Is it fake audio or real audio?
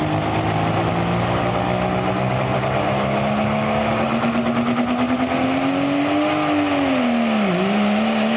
real